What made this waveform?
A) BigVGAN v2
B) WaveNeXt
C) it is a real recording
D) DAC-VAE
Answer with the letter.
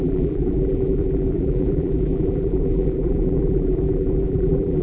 A